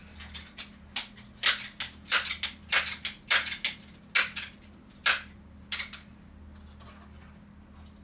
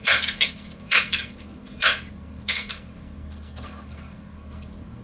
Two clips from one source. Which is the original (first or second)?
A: first